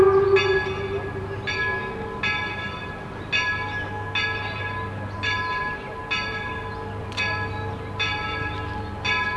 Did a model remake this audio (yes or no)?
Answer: no